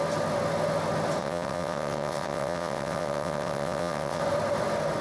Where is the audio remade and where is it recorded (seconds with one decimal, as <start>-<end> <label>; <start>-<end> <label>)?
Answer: 0.0-1.2 recorded; 1.2-4.2 remade; 4.2-5.0 recorded

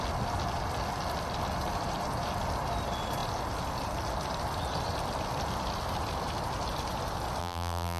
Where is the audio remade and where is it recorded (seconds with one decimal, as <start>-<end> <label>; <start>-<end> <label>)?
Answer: 0.0-7.4 recorded; 7.4-8.0 remade

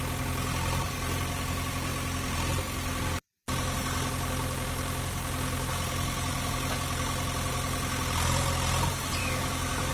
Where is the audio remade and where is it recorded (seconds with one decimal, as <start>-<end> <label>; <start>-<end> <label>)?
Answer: 0.0-9.2 recorded; 9.2-9.9 remade

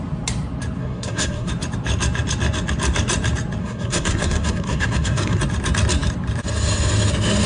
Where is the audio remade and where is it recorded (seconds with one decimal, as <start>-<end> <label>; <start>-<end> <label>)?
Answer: 0.0-0.8 recorded; 0.8-1.5 remade; 1.5-3.6 recorded; 3.6-5.4 remade; 5.4-7.5 recorded

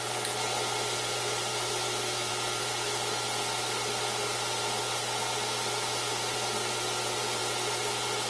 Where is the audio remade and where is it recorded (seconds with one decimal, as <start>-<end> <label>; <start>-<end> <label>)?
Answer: 0.0-1.5 recorded; 1.5-2.3 remade; 2.3-8.3 recorded

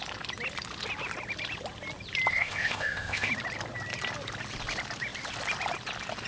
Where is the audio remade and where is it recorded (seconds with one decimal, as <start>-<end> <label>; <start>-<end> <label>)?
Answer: 0.0-2.3 recorded; 2.3-3.3 remade; 3.3-6.3 recorded

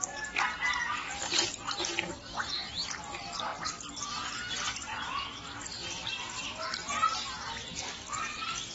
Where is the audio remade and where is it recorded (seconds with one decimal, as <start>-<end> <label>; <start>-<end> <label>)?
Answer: 0.0-8.7 recorded

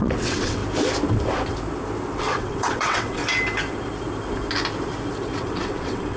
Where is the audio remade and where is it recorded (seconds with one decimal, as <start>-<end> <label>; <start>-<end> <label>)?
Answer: 0.0-0.6 remade; 0.6-2.2 recorded; 2.2-3.2 remade; 3.2-5.4 recorded; 5.4-6.2 remade